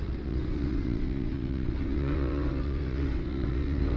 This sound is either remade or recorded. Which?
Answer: remade